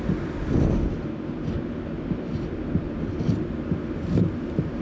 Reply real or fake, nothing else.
fake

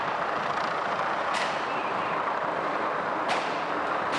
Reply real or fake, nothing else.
fake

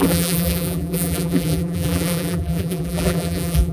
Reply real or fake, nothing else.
fake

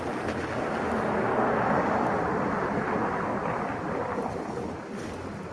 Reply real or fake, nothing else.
real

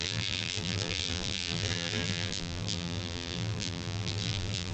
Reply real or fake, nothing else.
fake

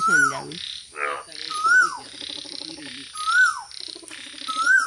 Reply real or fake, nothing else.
real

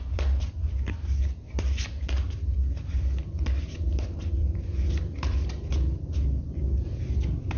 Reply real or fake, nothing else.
fake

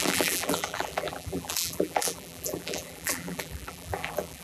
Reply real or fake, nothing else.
fake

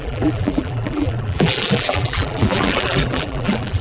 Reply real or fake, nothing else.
fake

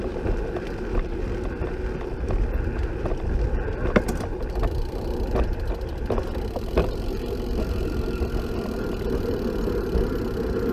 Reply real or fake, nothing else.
real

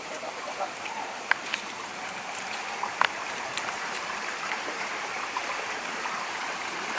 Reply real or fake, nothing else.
fake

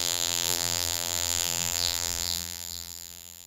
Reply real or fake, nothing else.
fake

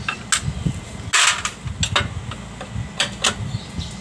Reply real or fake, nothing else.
real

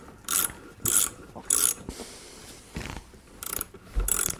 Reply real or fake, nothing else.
fake